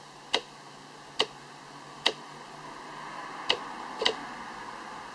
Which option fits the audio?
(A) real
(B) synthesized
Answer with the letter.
A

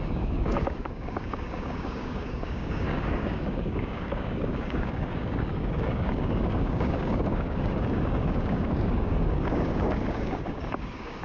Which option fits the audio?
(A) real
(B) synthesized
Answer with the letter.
B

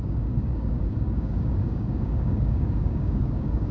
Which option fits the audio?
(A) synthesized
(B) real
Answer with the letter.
A